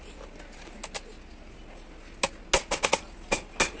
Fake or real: real